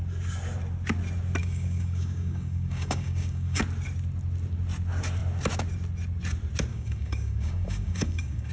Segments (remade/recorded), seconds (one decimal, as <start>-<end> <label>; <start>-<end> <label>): 0.0-1.4 recorded; 1.4-3.6 remade; 3.6-6.7 recorded; 6.7-8.5 remade